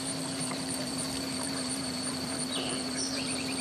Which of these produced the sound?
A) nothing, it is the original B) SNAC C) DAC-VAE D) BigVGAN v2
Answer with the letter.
D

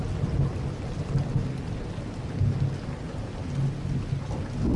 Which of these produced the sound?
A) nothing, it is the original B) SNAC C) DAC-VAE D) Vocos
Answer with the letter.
A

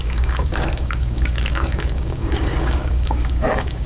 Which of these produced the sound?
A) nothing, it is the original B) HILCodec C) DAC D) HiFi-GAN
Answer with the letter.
C